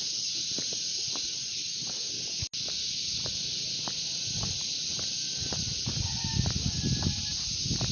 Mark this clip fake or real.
real